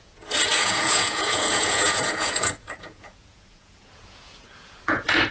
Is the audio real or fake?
fake